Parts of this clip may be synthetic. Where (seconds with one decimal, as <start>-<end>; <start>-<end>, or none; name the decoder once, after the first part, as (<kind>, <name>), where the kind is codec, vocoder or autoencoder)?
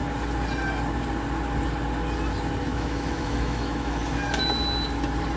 2.7-4.0 (autoencoder, DAC-VAE)